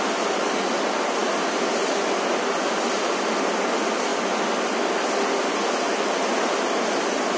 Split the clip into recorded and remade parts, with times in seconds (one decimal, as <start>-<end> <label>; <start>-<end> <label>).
0.0-7.4 recorded